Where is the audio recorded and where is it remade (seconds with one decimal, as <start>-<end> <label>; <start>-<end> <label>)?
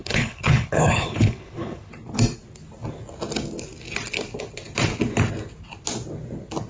0.0-1.9 remade; 1.9-6.7 recorded